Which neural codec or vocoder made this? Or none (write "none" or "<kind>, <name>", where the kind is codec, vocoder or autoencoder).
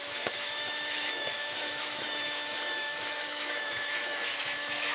autoencoder, DAC-VAE